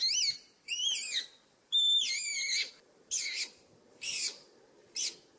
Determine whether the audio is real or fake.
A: real